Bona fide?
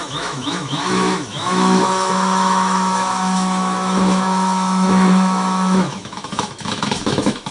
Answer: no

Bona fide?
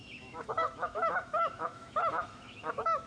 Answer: no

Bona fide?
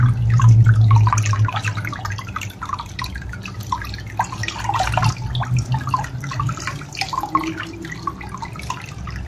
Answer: yes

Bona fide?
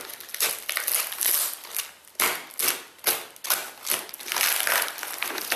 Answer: yes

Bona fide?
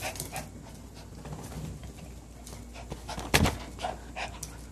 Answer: yes